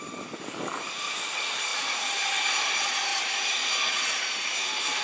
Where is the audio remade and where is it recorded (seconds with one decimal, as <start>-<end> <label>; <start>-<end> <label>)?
0.0-1.7 recorded; 1.7-2.3 remade; 2.3-5.0 recorded